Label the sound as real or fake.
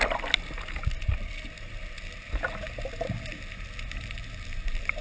real